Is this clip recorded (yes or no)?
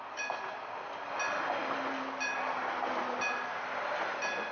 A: yes